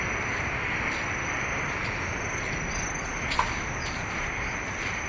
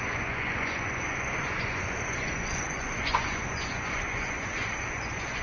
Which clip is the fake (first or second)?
second